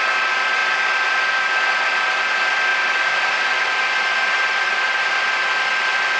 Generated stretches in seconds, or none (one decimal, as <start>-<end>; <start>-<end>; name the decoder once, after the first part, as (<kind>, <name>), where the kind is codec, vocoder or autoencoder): none